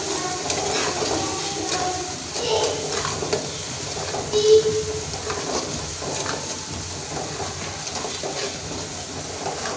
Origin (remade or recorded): recorded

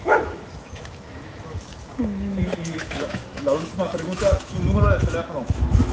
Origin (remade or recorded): remade